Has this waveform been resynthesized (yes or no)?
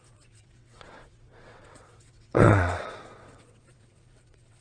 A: yes